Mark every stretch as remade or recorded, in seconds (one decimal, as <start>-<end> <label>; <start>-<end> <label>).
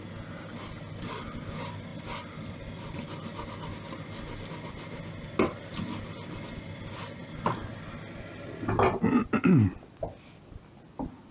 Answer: 0.0-11.3 recorded